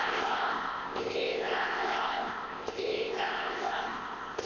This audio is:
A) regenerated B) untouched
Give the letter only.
A